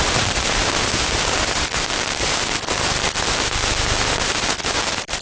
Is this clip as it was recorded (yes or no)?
yes